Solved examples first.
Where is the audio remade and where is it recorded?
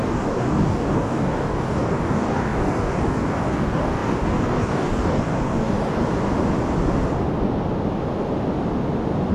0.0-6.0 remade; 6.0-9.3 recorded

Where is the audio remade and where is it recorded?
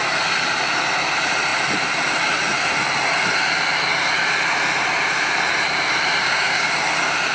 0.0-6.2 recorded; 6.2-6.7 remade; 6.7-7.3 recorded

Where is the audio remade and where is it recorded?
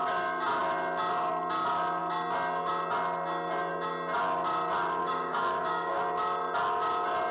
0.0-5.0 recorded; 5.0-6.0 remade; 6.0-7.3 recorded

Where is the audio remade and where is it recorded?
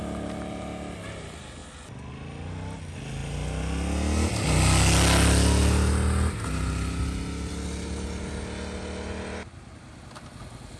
0.0-10.8 recorded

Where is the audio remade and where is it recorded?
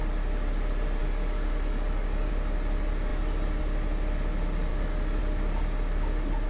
0.0-1.0 recorded; 1.0-2.3 remade; 2.3-4.7 recorded; 4.7-5.2 remade; 5.2-6.5 recorded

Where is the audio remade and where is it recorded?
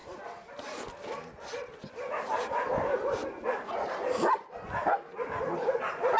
0.0-6.2 recorded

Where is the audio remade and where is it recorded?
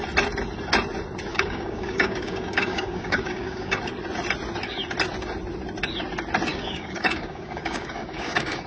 0.0-1.3 recorded; 1.3-3.8 remade; 3.8-6.5 recorded; 6.5-8.7 remade